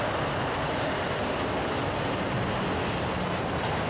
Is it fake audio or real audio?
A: real